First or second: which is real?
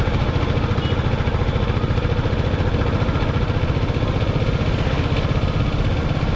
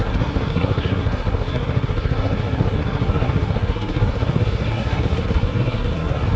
first